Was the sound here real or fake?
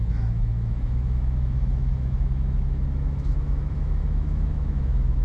fake